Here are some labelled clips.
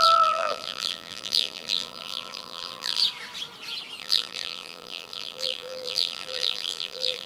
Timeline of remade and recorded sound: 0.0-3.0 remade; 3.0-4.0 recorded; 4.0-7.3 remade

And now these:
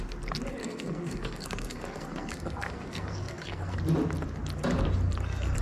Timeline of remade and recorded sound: 0.0-0.6 recorded; 0.6-3.8 remade; 3.8-5.6 recorded

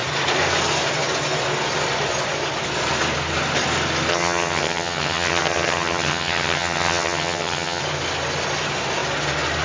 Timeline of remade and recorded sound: 0.0-4.1 recorded; 4.1-7.8 remade; 7.8-9.6 recorded

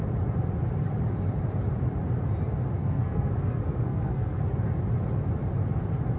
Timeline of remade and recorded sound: 0.0-2.8 recorded; 2.8-4.4 remade; 4.4-6.2 recorded